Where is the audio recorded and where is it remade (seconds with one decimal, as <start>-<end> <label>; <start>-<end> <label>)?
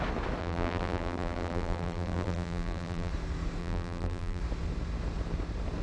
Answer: 0.0-0.4 recorded; 0.4-3.1 remade; 3.1-3.6 recorded; 3.6-4.4 remade; 4.4-5.8 recorded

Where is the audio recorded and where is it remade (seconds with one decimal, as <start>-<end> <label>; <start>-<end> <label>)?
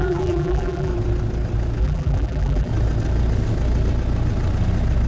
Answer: 0.0-0.9 remade; 0.9-1.8 recorded; 1.8-2.7 remade; 2.7-5.1 recorded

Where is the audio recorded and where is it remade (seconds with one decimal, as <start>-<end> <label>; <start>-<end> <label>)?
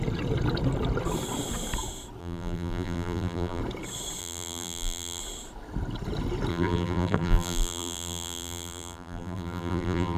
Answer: 0.0-2.2 recorded; 2.2-3.6 remade; 3.6-4.2 recorded; 4.2-5.2 remade; 5.2-6.5 recorded; 6.5-10.2 remade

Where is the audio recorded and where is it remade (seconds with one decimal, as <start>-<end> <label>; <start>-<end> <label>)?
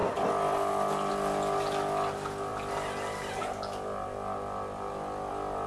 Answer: 0.0-5.7 recorded